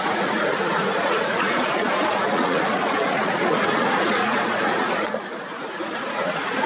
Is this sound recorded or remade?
remade